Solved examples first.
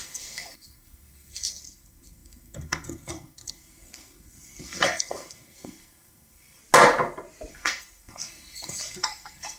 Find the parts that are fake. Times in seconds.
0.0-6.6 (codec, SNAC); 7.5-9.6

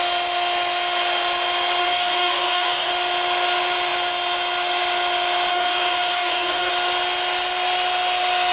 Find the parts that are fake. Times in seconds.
1.8-2.9 (codec, DAC); 5.5-6.7

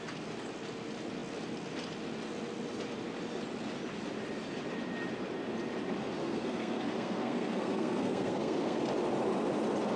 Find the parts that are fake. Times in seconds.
6.2-8.8 (codec, SNAC)